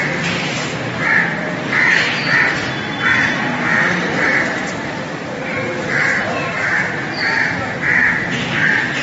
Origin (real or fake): real